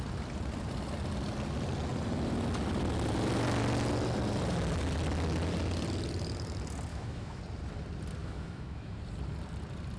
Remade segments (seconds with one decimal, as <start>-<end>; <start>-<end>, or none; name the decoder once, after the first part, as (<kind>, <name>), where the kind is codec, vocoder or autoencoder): 6.9-7.4 (autoencoder, DAC-VAE); 8.2-9.0

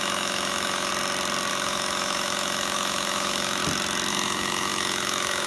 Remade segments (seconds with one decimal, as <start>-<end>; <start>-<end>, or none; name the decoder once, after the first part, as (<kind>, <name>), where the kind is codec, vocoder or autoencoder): 0.0-0.9 (autoencoder, DAC-VAE); 1.5-3.6; 4.1-5.5

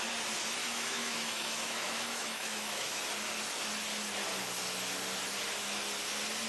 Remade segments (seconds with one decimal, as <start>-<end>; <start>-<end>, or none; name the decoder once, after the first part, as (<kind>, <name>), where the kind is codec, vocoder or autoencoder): 0.6-3.0 (autoencoder, DAC-VAE)

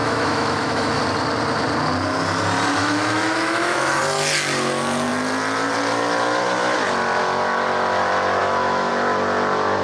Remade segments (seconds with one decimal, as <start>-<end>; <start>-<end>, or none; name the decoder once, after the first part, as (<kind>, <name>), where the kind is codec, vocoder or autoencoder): 0.0-1.0 (autoencoder, DAC-VAE); 2.8-4.0; 8.4-8.9

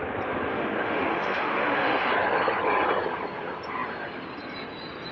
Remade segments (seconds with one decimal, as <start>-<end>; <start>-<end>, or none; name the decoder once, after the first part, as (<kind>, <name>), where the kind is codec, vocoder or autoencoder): 0.5-2.1 (autoencoder, DAC-VAE)

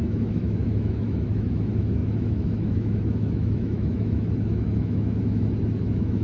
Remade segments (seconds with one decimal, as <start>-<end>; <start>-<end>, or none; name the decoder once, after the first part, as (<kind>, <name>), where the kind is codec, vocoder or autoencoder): 0.0-6.2 (autoencoder, DAC-VAE)